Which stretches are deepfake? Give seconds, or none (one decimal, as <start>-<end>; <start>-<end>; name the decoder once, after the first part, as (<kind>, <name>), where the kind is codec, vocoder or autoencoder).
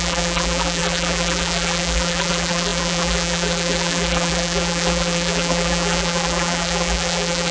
0.0-7.5 (vocoder, BigVGAN v2)